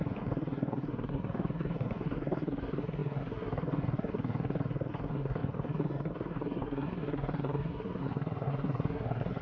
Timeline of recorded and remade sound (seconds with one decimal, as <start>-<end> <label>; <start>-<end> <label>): 0.0-9.4 remade

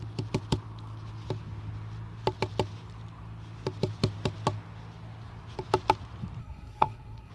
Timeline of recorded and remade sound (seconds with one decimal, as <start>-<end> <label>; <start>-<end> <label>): 0.0-6.4 recorded; 6.4-7.3 remade

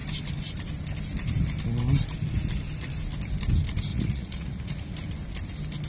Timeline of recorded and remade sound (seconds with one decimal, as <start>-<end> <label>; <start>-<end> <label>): 0.0-3.9 recorded; 3.9-4.8 remade; 4.8-5.9 recorded

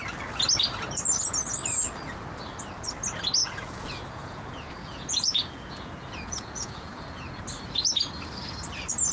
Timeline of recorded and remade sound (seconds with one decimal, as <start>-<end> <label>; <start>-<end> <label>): 0.0-3.4 recorded; 3.4-7.4 remade; 7.4-9.1 recorded

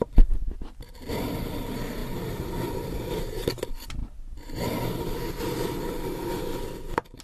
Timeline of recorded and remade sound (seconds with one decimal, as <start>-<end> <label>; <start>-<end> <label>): 0.0-7.2 recorded

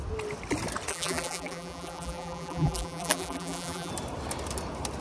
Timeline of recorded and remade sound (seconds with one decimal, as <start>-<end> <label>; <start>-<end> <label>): 0.0-0.9 recorded; 0.9-3.9 remade; 3.9-5.0 recorded

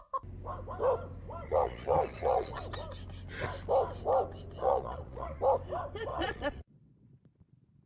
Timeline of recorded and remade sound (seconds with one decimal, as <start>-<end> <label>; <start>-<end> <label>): 0.0-1.4 recorded; 1.4-2.6 remade; 2.6-4.6 recorded; 4.6-5.4 remade; 5.4-6.1 recorded; 6.1-7.4 remade; 7.4-7.9 recorded